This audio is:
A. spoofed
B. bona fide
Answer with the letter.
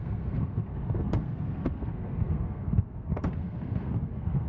A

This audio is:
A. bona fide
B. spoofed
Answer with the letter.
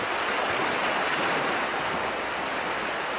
A